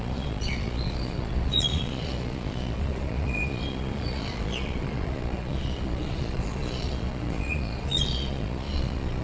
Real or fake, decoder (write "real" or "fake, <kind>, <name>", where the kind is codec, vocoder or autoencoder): fake, vocoder, Vocos